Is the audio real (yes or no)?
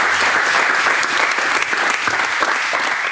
yes